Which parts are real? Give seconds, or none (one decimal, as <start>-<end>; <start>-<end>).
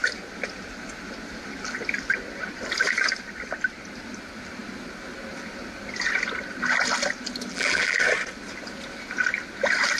0.0-7.5; 8.0-10.0